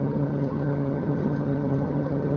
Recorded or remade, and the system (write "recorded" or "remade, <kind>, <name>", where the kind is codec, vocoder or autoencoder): remade, vocoder, HiFi-GAN